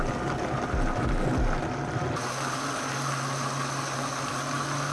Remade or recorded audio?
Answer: recorded